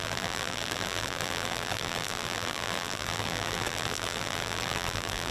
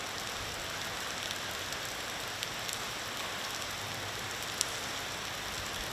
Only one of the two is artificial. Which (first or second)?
first